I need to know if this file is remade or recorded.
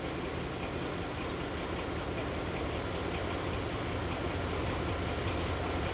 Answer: recorded